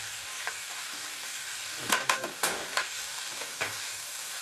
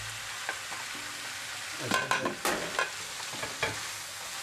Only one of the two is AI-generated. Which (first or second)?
first